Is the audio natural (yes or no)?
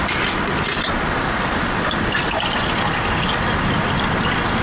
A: yes